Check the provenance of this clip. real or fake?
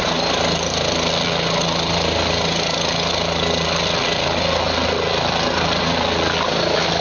real